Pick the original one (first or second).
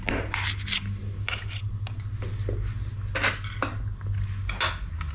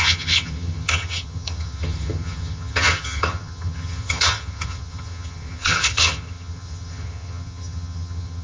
first